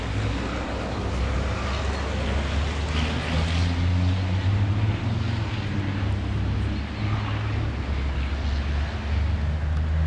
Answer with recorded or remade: recorded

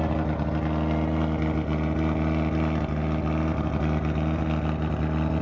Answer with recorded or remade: recorded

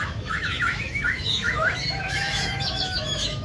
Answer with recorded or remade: remade